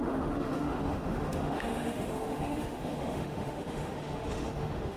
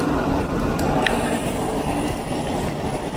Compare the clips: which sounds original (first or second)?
second